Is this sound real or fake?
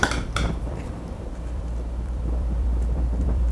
fake